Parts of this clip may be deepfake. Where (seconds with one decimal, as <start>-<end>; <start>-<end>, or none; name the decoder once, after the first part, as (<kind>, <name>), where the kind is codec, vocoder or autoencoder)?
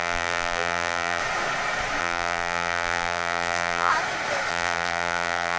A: 0.0-1.2 (vocoder, BigVGAN v2); 2.0-3.9; 4.5-5.6